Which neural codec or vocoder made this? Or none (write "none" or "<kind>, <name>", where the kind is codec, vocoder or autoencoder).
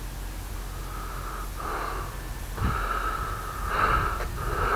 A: none